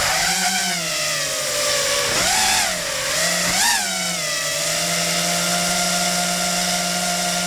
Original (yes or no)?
yes